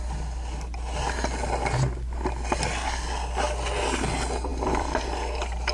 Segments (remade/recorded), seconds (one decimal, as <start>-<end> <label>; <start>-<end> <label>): 0.0-4.5 recorded; 4.5-5.0 remade; 5.0-5.7 recorded